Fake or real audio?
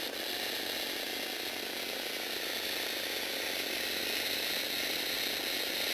real